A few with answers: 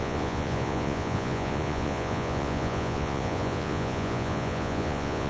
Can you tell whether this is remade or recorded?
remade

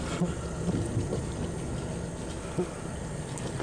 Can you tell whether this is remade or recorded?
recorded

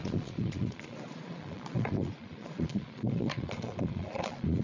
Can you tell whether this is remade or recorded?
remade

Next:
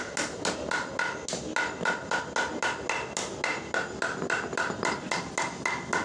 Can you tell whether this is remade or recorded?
recorded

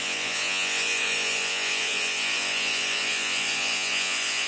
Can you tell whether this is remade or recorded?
remade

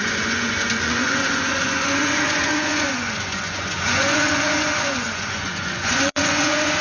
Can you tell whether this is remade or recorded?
remade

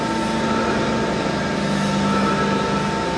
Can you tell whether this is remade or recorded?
recorded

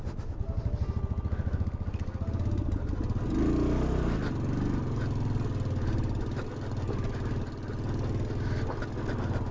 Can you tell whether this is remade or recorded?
recorded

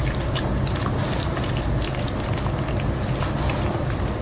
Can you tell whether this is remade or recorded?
recorded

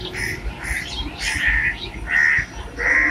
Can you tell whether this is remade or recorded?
recorded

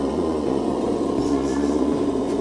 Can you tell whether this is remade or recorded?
remade